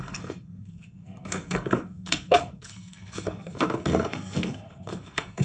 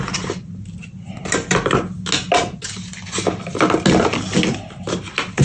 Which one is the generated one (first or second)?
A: first